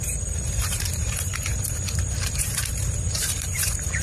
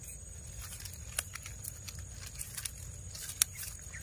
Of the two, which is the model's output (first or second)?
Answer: first